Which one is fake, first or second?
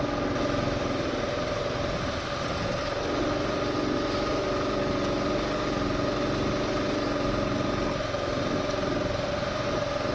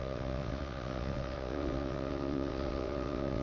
second